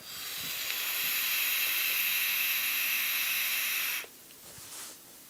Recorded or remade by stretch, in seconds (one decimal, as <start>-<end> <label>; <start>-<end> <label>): 0.0-2.0 recorded; 2.0-3.7 remade; 3.7-5.3 recorded